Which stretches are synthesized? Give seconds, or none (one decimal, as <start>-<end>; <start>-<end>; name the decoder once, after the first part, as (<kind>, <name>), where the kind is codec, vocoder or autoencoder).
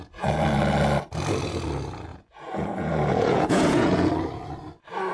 2.1-4.1 (vocoder, Vocos)